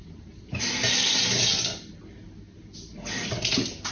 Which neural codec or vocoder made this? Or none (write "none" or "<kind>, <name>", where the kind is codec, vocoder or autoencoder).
none